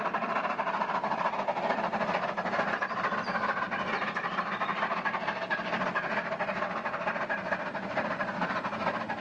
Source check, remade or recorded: recorded